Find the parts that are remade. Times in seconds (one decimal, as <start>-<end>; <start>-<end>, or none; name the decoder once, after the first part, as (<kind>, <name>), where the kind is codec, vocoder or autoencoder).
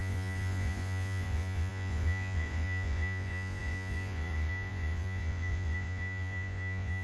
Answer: 0.0-7.0 (vocoder, Vocos)